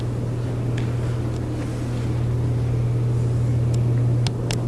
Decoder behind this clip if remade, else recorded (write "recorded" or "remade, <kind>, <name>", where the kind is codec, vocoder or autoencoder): recorded